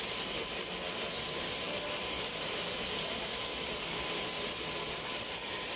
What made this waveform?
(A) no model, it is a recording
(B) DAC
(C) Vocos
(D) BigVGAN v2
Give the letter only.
A